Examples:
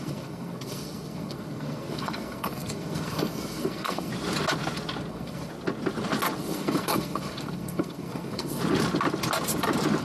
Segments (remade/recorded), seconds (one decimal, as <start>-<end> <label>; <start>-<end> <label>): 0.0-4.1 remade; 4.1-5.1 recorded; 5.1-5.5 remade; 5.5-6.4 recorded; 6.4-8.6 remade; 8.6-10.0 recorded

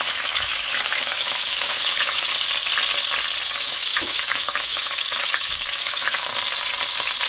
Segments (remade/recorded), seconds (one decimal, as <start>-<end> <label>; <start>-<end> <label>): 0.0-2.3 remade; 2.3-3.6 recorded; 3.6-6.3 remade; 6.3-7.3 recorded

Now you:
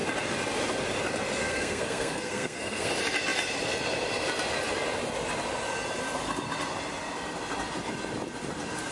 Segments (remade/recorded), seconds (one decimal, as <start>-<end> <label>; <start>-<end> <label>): 0.0-1.4 recorded; 1.4-2.9 remade; 2.9-8.9 recorded